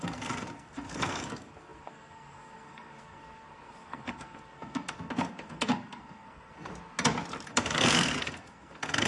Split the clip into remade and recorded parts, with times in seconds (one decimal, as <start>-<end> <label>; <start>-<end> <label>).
0.0-6.7 remade; 6.7-7.5 recorded; 7.5-9.1 remade